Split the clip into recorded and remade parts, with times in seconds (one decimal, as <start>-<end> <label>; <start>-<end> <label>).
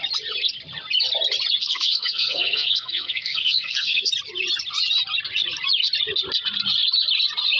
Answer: 0.0-1.6 recorded; 1.6-4.1 remade; 4.1-7.6 recorded